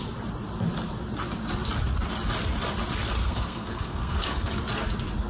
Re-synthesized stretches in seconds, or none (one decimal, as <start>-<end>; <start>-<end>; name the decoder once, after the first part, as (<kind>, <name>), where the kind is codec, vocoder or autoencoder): 3.2-4.5 (codec, SNAC)